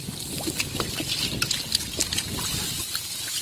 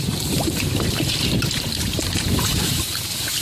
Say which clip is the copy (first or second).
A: second